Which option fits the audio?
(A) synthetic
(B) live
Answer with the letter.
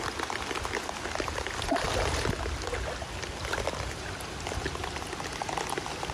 B